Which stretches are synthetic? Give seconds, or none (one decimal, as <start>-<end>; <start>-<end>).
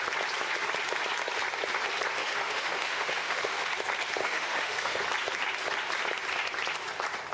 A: 2.2-3.7; 4.2-5.0